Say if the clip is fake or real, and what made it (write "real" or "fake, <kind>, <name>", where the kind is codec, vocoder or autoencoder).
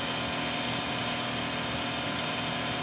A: real